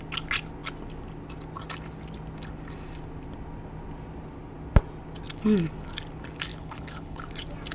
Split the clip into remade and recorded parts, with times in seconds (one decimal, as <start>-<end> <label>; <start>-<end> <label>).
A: 0.0-6.5 recorded; 6.5-7.2 remade; 7.2-7.7 recorded